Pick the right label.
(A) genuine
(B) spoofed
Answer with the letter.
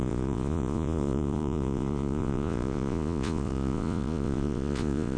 B